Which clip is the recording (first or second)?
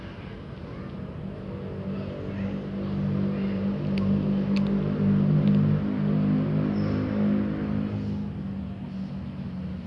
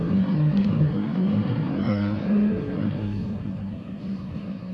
first